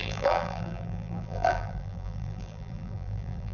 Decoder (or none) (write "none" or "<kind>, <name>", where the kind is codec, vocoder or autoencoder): vocoder, BigVGAN v2